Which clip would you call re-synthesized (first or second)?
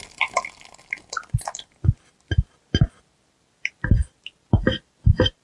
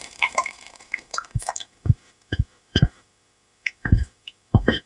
second